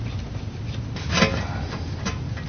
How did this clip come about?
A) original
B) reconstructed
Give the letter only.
A